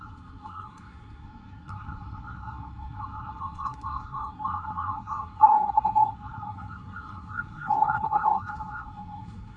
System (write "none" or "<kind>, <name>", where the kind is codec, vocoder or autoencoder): codec, SNAC